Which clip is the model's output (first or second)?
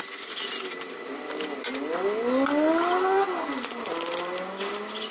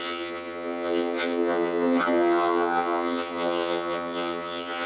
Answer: second